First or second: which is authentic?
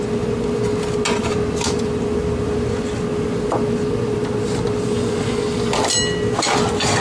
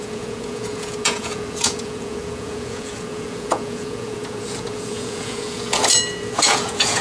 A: first